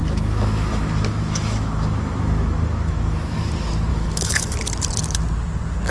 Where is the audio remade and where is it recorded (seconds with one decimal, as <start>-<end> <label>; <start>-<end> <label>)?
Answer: 0.0-3.5 remade; 3.5-3.9 recorded; 3.9-4.6 remade; 4.6-5.9 recorded